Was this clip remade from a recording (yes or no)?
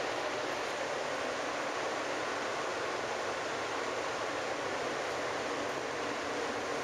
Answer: no